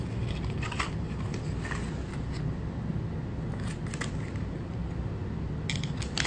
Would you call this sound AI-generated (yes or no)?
no